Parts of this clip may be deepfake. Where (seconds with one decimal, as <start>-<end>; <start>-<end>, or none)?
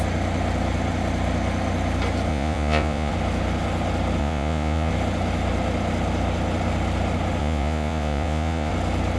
2.3-3.1; 4.2-4.9; 7.4-8.7